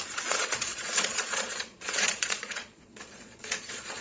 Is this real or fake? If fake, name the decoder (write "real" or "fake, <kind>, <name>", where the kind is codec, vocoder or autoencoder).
fake, vocoder, Vocos